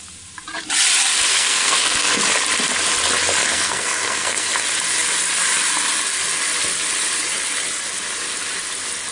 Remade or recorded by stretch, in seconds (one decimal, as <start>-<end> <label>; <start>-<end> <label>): 0.0-1.3 recorded; 1.3-2.2 remade; 2.2-3.4 recorded; 3.4-4.5 remade; 4.5-9.1 recorded